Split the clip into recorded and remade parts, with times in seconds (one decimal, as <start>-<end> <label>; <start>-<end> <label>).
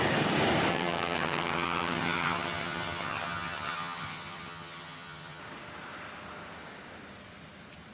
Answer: 0.0-0.7 recorded; 0.7-5.4 remade; 5.4-7.9 recorded